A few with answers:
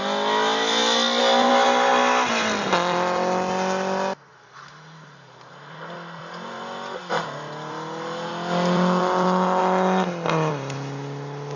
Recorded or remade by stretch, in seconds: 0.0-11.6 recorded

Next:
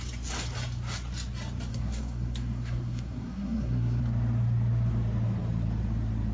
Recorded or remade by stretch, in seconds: 0.0-1.7 recorded; 1.7-4.0 remade; 4.0-6.3 recorded

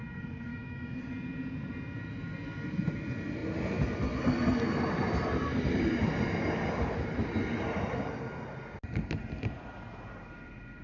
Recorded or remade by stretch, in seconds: 0.0-0.5 recorded; 0.5-1.0 remade; 1.0-10.8 recorded

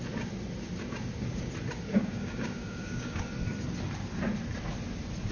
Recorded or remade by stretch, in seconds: 0.0-1.9 recorded; 1.9-3.2 remade; 3.2-5.3 recorded

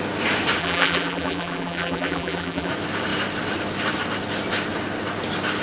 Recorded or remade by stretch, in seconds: 0.0-0.6 recorded; 0.6-2.7 remade; 2.7-5.6 recorded

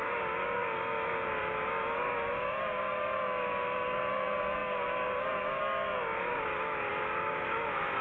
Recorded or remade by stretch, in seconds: 0.0-8.0 remade

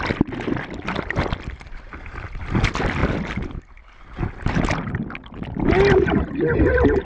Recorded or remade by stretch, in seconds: 0.0-7.0 recorded

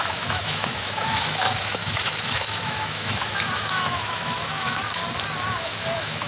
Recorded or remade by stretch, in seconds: 0.0-4.8 remade; 4.8-5.6 recorded; 5.6-6.3 remade